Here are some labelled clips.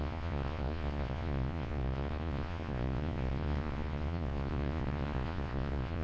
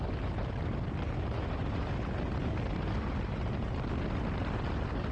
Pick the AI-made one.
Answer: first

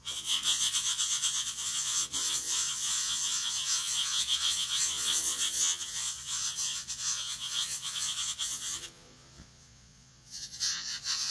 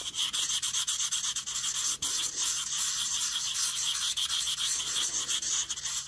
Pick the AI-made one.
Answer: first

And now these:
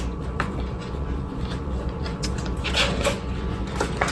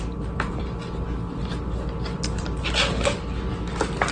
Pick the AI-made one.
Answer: first